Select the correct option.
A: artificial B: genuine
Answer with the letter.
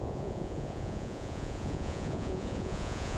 A